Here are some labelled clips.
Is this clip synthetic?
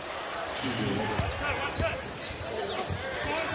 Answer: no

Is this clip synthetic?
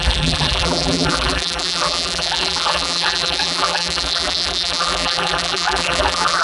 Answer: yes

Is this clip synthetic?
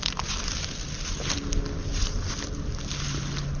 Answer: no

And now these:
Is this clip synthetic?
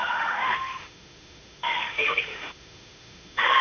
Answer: yes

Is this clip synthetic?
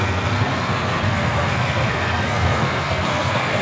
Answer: yes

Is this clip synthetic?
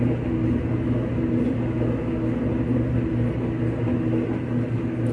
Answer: no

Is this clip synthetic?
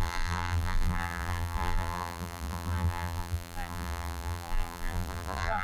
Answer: yes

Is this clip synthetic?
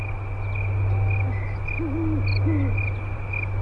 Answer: no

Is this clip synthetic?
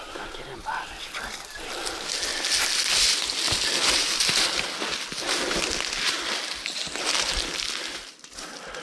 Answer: no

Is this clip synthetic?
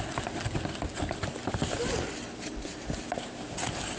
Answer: no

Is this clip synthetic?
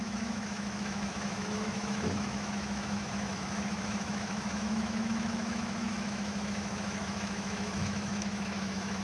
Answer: yes